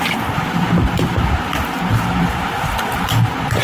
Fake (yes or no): no